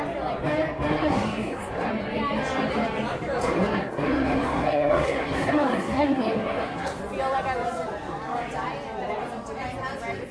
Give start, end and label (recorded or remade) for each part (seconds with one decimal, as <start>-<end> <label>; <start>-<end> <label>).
0.0-0.9 recorded; 0.9-1.9 remade; 1.9-3.4 recorded; 3.4-7.0 remade; 7.0-10.3 recorded